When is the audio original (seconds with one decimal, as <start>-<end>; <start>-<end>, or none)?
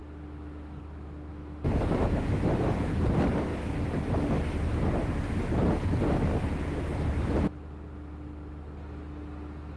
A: 0.8-1.3; 2.6-9.8